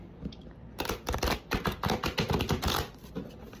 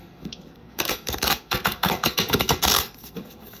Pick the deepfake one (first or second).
second